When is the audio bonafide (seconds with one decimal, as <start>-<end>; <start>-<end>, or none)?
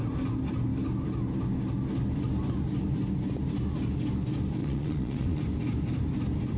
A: 0.0-4.6; 5.4-6.6